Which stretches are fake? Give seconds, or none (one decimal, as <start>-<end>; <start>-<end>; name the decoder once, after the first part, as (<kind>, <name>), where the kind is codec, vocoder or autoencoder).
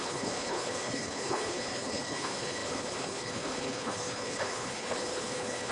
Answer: 0.0-5.7 (codec, HILCodec)